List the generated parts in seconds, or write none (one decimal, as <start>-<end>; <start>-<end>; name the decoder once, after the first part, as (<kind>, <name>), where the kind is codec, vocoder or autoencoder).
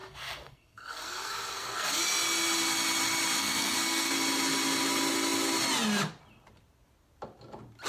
0.0-2.0 (codec, SNAC); 3.4-4.1